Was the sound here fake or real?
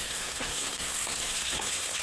fake